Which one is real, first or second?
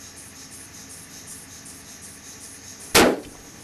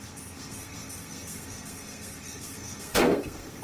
first